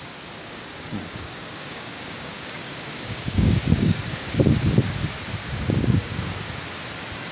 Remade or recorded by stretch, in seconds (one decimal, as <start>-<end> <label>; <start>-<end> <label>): 0.0-0.4 recorded; 0.4-4.4 remade; 4.4-5.4 recorded; 5.4-6.4 remade; 6.4-7.3 recorded